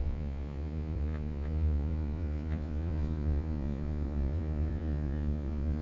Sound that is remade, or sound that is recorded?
remade